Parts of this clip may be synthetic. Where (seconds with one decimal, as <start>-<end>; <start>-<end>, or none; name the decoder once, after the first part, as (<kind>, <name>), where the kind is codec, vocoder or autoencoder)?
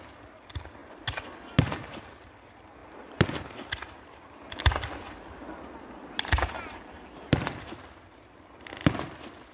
2.8-6.5 (vocoder, BigVGAN v2)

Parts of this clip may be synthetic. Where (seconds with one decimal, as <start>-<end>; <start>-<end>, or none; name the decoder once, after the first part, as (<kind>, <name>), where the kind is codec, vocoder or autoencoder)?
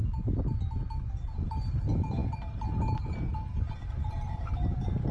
0.9-5.1 (vocoder, BigVGAN v2)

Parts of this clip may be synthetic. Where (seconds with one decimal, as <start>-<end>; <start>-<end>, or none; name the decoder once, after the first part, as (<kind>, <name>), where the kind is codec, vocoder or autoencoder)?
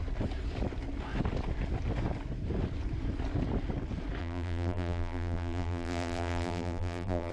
4.2-7.3 (vocoder, BigVGAN v2)